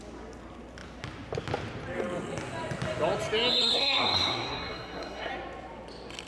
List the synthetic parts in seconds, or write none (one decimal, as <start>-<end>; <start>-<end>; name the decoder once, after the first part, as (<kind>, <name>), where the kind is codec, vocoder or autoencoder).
3.6-5.3 (codec, SNAC)